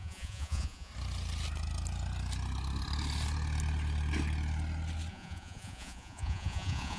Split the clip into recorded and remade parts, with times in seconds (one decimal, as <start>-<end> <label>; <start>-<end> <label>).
0.0-0.9 remade; 0.9-5.1 recorded; 5.1-7.0 remade